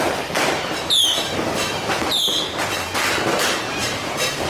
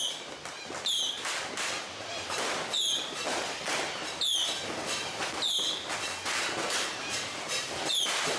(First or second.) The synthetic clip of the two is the second